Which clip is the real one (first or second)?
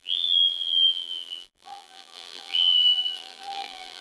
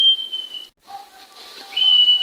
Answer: second